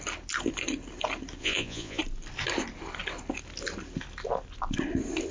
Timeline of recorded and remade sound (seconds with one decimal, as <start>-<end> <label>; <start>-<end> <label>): 0.0-1.4 recorded; 1.4-2.0 remade; 2.0-5.3 recorded